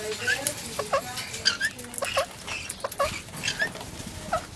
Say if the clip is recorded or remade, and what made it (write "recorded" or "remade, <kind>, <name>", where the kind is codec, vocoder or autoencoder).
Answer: recorded